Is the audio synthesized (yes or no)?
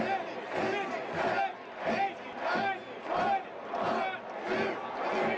no